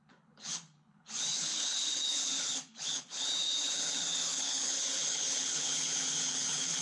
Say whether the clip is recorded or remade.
remade